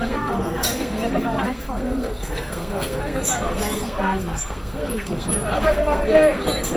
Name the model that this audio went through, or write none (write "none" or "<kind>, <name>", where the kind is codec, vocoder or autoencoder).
codec, SNAC